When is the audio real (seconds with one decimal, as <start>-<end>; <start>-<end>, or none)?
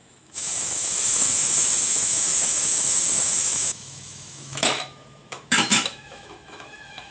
none